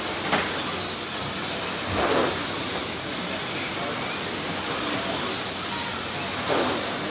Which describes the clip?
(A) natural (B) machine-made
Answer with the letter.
A